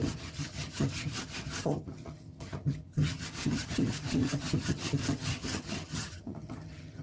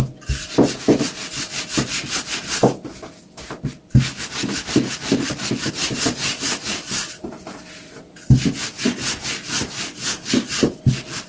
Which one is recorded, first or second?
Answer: second